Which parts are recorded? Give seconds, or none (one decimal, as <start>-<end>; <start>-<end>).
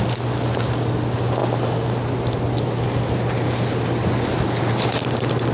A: 0.0-5.5